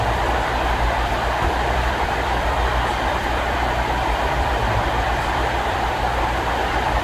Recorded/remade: remade